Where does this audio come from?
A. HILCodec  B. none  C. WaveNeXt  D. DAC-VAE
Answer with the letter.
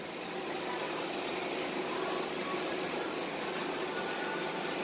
B